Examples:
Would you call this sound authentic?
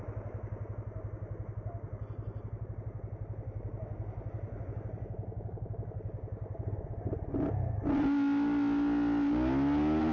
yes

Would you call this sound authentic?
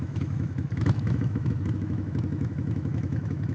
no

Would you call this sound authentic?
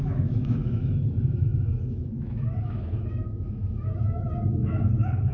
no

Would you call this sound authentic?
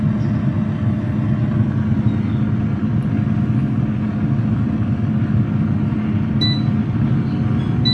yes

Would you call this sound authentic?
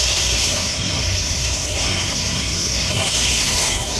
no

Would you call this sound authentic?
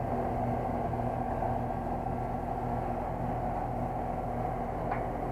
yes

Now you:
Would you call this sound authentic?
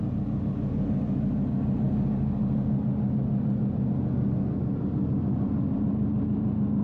yes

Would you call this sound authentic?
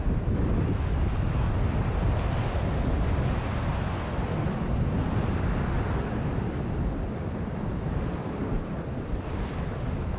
yes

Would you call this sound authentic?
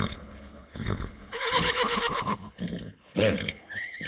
no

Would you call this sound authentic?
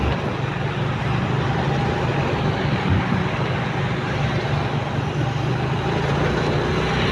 yes